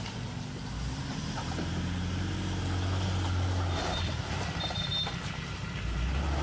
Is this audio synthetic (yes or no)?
no